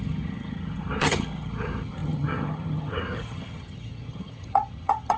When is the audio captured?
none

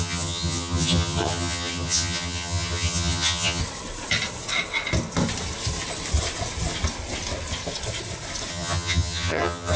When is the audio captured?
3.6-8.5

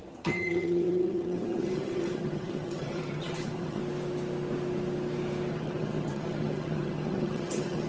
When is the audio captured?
3.8-5.5

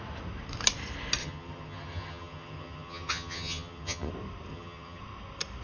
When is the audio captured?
0.0-1.2; 4.1-4.5; 5.0-5.6